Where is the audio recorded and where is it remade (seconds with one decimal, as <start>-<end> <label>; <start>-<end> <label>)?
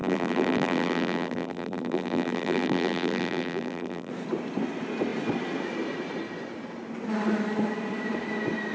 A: 0.0-4.1 remade; 4.1-8.7 recorded